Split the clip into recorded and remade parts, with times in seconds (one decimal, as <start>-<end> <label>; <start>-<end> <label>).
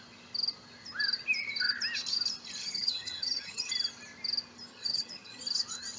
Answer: 0.0-2.6 recorded; 2.6-3.7 remade; 3.7-4.7 recorded; 4.7-5.4 remade; 5.4-6.0 recorded